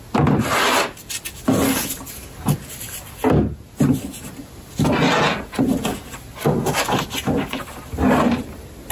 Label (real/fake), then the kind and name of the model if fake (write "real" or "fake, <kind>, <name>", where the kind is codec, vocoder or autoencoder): real